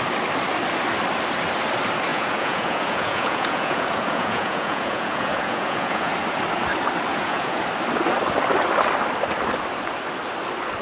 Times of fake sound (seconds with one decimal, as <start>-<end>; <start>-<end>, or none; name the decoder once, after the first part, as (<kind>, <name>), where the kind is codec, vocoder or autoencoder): 2.1-6.1 (vocoder, Vocos); 7.1-7.6